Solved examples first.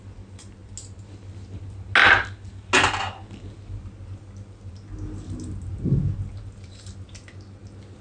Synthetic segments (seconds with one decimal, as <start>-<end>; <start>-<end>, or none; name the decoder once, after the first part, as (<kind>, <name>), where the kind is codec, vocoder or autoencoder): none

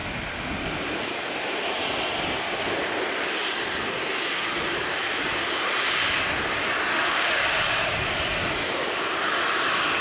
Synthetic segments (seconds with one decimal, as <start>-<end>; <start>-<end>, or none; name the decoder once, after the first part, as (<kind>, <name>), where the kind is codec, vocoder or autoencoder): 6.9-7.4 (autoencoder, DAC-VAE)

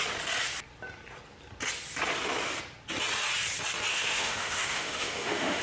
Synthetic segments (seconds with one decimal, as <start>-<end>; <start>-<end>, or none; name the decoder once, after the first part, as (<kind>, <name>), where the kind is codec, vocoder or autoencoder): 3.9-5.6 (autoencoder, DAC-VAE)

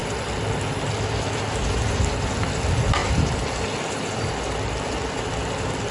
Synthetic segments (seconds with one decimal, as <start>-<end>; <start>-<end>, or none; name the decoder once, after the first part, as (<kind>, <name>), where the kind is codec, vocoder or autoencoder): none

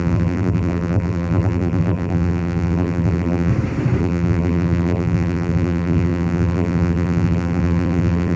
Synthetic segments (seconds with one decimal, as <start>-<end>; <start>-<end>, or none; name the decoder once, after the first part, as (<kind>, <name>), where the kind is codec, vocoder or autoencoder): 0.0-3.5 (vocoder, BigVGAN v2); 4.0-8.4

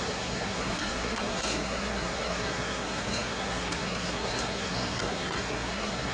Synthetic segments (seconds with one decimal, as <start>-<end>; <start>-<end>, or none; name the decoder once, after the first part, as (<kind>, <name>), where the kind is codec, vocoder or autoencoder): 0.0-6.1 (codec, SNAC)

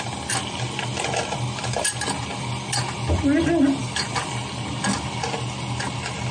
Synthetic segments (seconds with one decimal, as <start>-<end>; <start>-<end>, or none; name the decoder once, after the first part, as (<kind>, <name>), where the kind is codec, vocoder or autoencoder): none